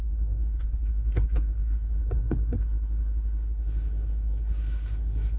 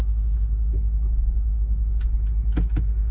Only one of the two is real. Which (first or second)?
second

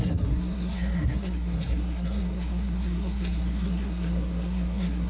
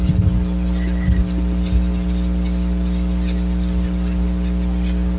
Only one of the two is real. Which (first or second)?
second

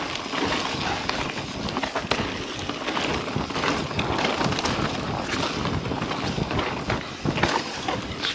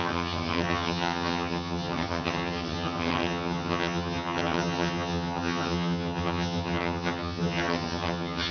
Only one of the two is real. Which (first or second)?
first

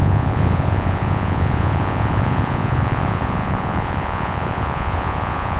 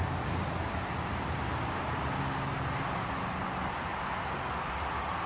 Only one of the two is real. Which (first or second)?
second